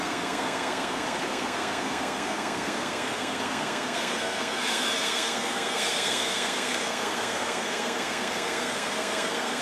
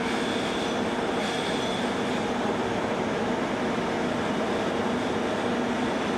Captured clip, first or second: second